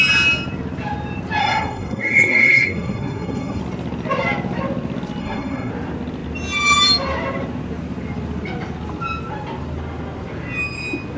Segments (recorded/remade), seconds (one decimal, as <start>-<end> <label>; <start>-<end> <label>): 0.0-1.4 recorded; 1.4-3.6 remade; 3.6-5.2 recorded; 5.2-5.7 remade; 5.7-11.2 recorded